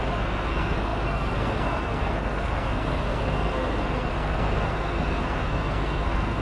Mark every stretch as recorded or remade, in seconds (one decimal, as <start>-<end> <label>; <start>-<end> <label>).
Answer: 0.0-6.4 remade